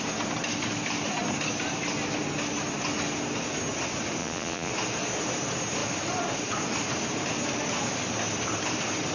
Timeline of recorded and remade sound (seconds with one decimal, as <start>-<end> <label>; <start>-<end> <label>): 0.0-4.2 recorded; 4.2-4.7 remade; 4.7-9.1 recorded